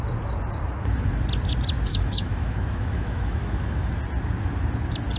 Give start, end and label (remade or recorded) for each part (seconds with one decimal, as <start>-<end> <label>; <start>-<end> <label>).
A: 0.0-1.9 recorded; 1.9-3.9 remade; 3.9-5.2 recorded